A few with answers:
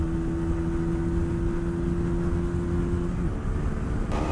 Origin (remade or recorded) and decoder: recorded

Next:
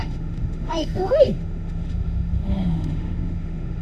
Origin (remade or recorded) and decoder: remade, autoencoder, DAC-VAE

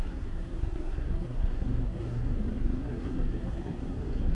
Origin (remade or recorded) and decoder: remade, codec, SNAC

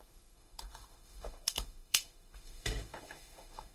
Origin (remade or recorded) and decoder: remade, autoencoder, DAC-VAE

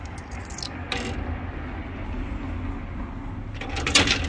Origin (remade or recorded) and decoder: recorded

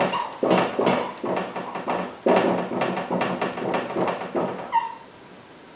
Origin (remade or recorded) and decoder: recorded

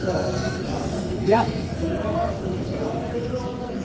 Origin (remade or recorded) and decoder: remade, codec, SNAC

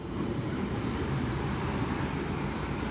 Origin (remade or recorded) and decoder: remade, vocoder, BigVGAN v2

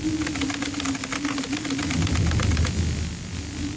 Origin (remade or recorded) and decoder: recorded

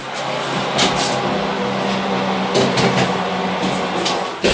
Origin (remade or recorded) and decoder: recorded